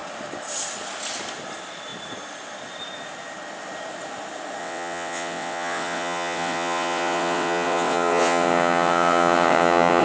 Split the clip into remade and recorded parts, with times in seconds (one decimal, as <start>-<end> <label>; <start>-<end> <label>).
0.0-4.6 recorded; 4.6-10.0 remade